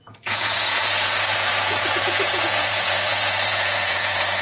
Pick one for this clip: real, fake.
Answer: fake